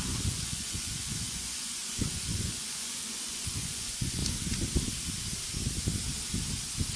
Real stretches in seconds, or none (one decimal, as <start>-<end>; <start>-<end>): 4.2-7.0

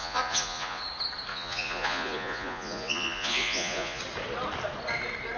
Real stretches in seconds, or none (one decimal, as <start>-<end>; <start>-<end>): 0.8-1.3; 4.0-5.4

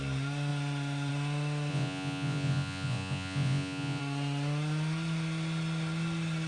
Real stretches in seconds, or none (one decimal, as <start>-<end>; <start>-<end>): 0.0-1.7; 4.0-6.5

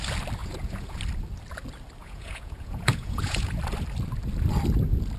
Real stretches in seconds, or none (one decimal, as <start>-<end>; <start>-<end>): 0.0-0.4; 1.0-2.0; 3.6-5.2

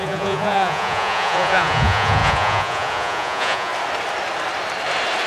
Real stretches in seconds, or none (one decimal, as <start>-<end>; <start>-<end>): 3.7-5.3